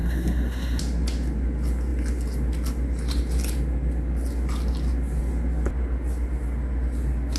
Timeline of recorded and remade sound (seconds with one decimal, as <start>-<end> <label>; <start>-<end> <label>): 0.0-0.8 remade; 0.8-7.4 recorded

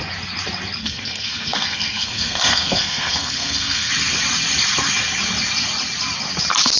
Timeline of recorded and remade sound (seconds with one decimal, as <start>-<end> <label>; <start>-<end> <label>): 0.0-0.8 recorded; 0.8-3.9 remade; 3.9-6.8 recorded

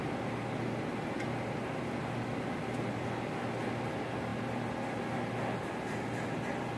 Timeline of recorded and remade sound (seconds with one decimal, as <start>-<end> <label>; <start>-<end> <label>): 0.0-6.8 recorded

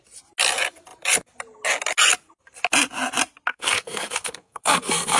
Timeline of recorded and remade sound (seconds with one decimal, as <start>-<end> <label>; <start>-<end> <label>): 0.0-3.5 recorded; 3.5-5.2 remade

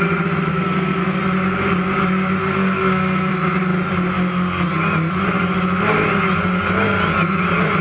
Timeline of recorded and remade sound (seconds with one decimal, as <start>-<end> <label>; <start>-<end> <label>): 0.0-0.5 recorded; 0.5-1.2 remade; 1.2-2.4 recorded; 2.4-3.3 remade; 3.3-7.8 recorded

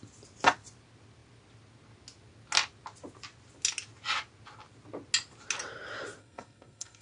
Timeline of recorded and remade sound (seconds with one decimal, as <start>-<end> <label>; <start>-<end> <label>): 0.0-6.2 recorded; 6.2-7.0 remade

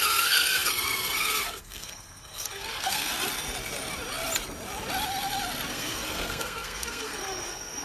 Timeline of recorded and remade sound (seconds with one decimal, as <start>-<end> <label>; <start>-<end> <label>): 0.0-3.1 remade; 3.1-5.7 recorded; 5.7-7.8 remade